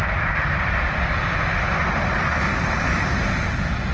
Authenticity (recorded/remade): recorded